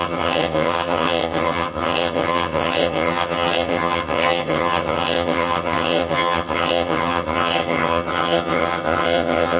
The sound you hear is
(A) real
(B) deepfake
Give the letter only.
B